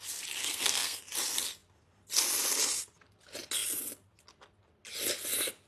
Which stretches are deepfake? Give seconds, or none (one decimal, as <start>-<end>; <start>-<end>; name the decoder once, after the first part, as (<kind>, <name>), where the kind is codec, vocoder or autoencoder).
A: 0.4-1.0 (codec, SNAC)